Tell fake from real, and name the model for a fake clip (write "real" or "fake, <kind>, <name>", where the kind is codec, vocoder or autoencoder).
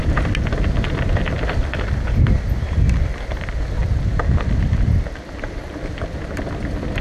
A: real